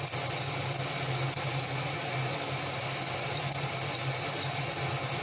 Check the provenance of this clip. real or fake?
real